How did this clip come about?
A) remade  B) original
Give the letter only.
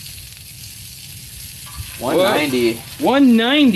B